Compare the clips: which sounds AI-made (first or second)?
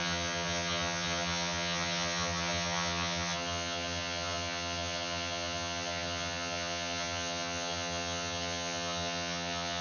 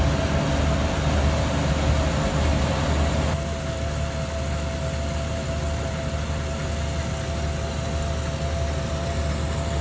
first